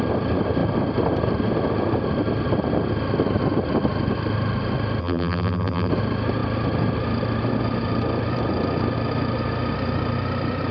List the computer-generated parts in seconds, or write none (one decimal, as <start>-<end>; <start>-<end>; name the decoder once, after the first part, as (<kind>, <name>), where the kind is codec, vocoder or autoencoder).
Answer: 5.0-5.9 (vocoder, BigVGAN v2)